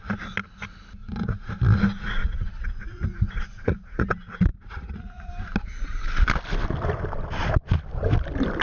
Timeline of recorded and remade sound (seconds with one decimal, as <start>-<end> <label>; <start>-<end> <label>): 0.0-1.0 recorded; 1.0-1.5 remade; 1.5-2.2 recorded; 2.2-4.1 remade; 4.1-4.5 recorded; 4.5-5.3 remade; 5.3-8.6 recorded